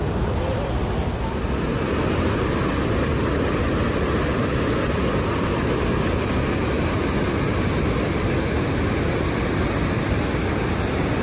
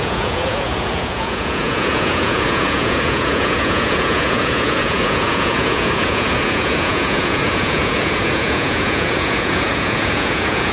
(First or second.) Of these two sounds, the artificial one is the second